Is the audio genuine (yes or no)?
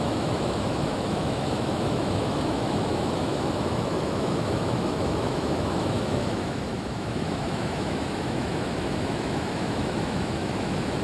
no